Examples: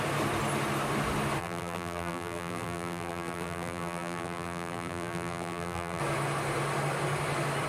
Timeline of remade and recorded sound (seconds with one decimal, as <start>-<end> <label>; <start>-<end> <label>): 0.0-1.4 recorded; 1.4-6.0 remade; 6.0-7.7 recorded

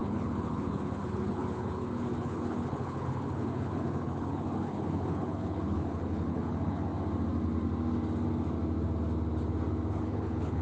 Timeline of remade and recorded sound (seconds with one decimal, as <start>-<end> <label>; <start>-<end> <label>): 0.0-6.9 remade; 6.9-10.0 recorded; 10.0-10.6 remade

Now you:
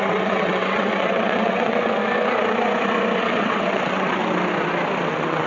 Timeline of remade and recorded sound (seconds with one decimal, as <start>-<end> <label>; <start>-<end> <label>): 0.0-2.0 remade; 2.0-3.2 recorded; 3.2-4.2 remade; 4.2-5.1 recorded; 5.1-5.5 remade

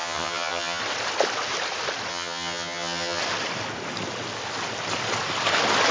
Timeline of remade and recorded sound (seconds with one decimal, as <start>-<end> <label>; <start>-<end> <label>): 0.0-0.8 remade; 0.8-2.1 recorded; 2.1-3.2 remade; 3.2-5.9 recorded

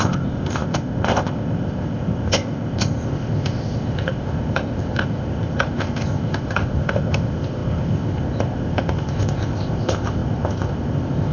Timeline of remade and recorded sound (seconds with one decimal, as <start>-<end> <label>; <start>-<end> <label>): 0.0-11.3 remade